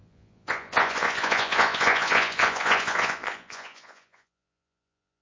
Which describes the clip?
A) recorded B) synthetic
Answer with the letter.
B